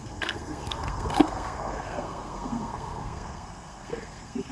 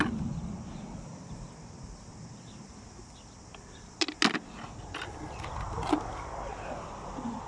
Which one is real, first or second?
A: second